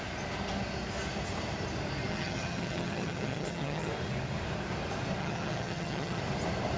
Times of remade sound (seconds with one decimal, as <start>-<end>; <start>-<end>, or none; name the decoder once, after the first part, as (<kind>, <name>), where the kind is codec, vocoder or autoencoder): 2.1-3.9 (vocoder, HiFi-GAN); 5.2-6.2